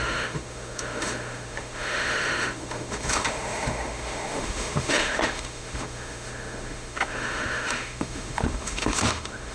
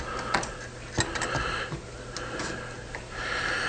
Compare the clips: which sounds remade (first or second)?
first